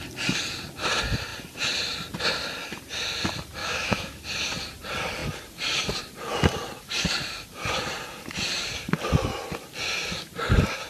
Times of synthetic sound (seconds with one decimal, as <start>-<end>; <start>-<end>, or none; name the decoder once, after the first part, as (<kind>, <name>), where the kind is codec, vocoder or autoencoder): 3.6-4.2 (autoencoder, DAC-VAE)